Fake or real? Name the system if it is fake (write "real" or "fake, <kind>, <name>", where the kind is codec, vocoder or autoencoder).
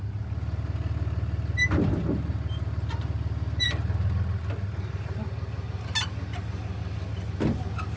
real